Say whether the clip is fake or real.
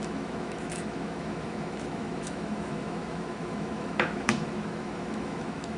fake